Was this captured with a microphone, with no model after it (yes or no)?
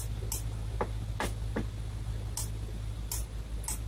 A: yes